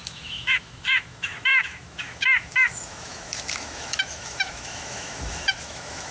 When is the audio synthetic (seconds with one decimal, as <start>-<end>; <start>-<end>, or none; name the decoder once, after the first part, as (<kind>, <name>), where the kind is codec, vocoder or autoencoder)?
0.0-6.1 (autoencoder, DAC-VAE)

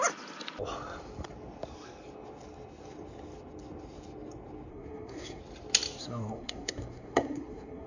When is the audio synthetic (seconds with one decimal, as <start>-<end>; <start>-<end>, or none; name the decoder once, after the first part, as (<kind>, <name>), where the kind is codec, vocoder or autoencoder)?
4.7-5.4 (codec, SNAC); 6.0-7.9

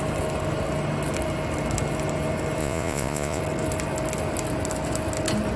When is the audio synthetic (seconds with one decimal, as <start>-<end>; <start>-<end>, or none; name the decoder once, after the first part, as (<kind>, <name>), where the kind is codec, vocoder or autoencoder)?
2.6-3.4 (vocoder, Vocos)

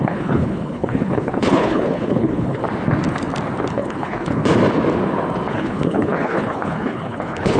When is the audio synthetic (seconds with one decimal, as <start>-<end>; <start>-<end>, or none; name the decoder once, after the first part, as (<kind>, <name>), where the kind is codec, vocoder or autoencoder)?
0.0-2.6 (codec, HILCodec); 3.7-4.4; 5.5-7.6

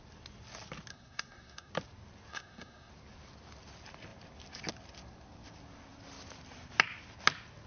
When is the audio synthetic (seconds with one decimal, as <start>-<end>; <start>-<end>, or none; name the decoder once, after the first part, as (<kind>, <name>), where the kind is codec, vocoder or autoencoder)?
0.9-1.7 (codec, SNAC); 2.3-2.9

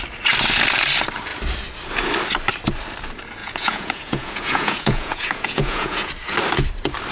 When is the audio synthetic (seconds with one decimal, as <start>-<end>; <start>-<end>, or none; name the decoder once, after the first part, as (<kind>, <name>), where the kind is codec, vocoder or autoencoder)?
3.4-6.1 (vocoder, Vocos)